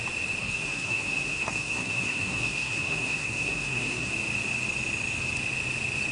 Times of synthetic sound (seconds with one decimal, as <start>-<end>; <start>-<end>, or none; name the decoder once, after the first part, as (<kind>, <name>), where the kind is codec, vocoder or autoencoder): 0.4-4.1 (codec, SNAC)